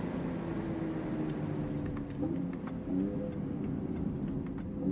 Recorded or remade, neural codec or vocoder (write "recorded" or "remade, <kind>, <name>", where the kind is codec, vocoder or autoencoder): recorded